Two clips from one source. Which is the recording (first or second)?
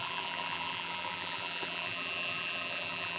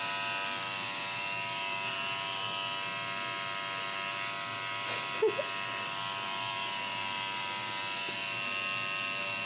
second